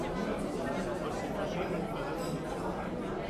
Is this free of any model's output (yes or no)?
yes